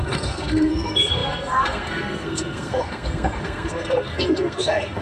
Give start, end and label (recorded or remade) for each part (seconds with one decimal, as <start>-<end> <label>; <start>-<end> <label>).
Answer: 0.0-5.0 remade